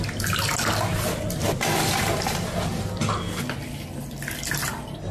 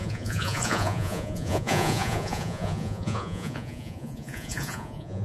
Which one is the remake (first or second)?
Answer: second